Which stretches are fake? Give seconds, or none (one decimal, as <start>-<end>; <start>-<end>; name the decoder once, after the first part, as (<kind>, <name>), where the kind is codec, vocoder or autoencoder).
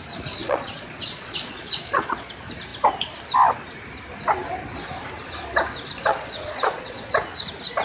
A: 0.4-2.3 (vocoder, Vocos); 6.1-7.1